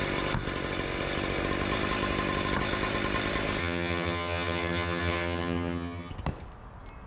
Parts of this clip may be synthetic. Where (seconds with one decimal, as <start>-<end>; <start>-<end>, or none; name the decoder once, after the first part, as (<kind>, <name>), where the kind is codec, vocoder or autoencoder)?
3.6-6.1 (vocoder, HiFi-GAN)